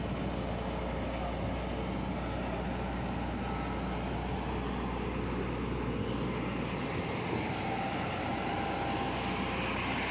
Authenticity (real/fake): real